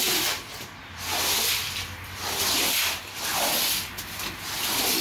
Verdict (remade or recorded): recorded